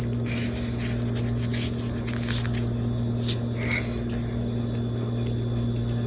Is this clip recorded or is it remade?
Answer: recorded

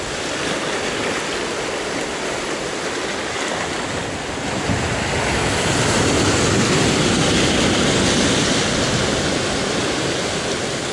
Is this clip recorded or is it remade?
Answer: recorded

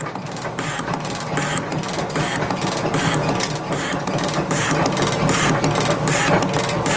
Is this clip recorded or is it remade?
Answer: recorded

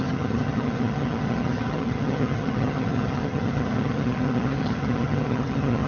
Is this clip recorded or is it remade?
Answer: remade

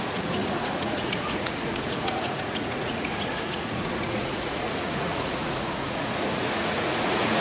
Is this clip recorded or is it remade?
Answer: remade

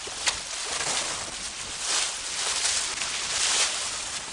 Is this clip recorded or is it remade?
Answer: recorded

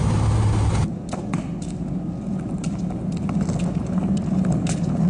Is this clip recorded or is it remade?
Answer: recorded